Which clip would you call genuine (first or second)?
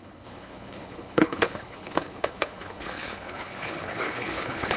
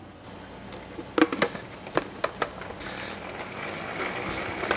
second